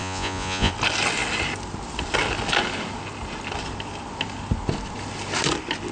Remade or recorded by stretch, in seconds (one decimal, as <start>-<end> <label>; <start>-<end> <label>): 0.0-0.7 remade; 0.7-5.9 recorded